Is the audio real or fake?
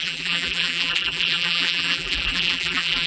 fake